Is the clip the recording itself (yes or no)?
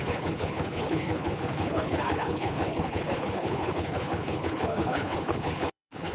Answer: no